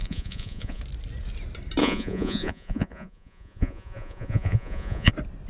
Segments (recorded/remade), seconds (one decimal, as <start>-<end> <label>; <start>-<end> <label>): 0.0-0.8 remade; 0.8-1.8 recorded; 1.8-5.1 remade; 5.1-5.5 recorded